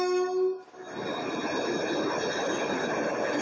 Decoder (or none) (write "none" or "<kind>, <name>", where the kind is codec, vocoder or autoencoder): none